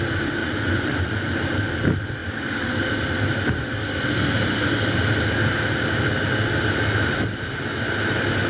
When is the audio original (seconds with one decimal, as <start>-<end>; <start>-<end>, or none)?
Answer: 0.0-0.4; 1.3-8.5